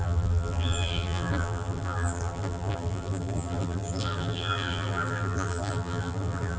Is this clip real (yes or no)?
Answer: no